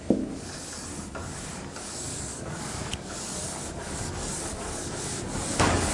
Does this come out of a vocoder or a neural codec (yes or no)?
yes